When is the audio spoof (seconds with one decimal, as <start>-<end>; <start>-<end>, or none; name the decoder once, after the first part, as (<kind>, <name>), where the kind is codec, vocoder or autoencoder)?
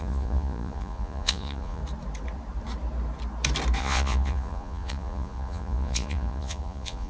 0.0-1.8 (vocoder, Vocos); 3.8-7.1